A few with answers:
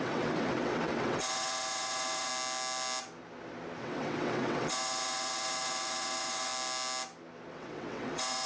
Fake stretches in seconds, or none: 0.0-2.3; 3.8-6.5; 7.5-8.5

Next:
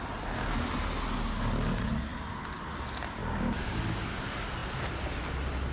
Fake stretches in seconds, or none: 3.2-3.8

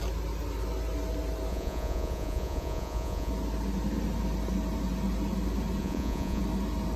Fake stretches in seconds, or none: 1.5-3.3; 5.8-6.4